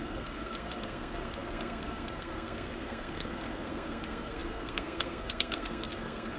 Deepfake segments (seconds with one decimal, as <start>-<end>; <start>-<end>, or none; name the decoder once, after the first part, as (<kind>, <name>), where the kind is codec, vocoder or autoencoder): 0.0-6.4 (codec, SNAC)